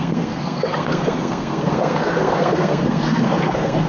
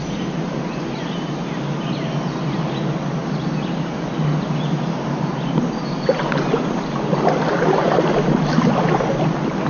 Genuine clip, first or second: second